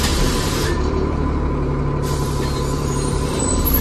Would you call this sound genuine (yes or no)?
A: no